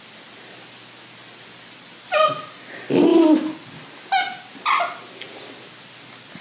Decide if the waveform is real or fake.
real